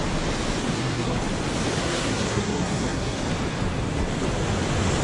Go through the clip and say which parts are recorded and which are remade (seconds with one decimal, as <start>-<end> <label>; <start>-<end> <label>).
0.0-0.6 recorded; 0.6-1.2 remade; 1.2-1.8 recorded; 1.8-3.2 remade; 3.2-5.0 recorded